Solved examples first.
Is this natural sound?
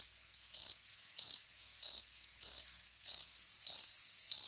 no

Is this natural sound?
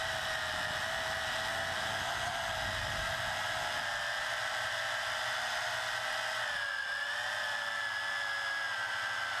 yes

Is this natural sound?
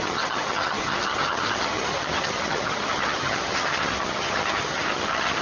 no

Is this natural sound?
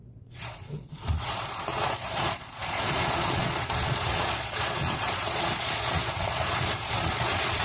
no